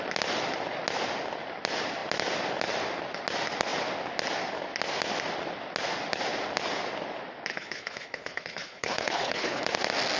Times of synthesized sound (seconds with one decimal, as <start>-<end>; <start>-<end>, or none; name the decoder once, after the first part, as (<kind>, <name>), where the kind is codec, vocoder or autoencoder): 7.5-9.6 (codec, HILCodec)